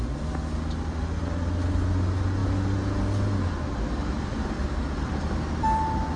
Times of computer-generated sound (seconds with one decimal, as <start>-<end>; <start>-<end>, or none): none